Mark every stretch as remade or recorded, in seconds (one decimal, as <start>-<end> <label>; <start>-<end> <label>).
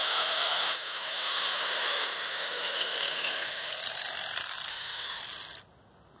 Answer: 0.0-3.7 remade; 3.7-4.7 recorded; 4.7-5.2 remade; 5.2-6.2 recorded